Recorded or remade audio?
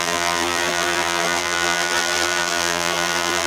remade